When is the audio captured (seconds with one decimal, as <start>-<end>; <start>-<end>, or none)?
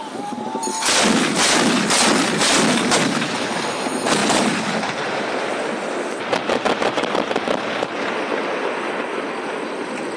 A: 0.0-0.7; 3.7-10.2